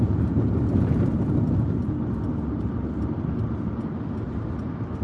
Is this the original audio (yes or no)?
yes